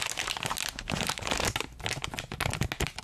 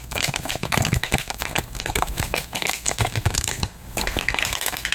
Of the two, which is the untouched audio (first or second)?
first